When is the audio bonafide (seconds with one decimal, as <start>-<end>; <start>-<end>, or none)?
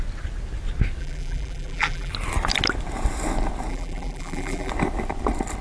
0.0-1.0; 2.1-3.7; 4.7-5.6